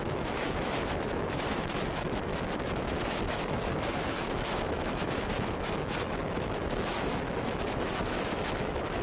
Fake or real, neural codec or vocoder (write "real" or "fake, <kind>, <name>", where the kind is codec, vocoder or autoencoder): fake, autoencoder, DAC-VAE